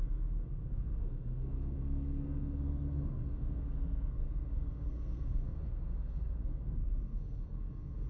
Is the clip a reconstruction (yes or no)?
yes